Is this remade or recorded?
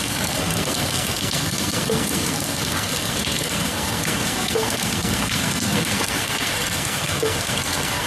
remade